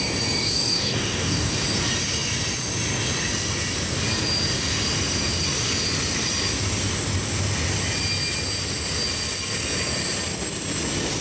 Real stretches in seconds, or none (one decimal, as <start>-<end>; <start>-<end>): 0.0-0.4; 1.5-11.2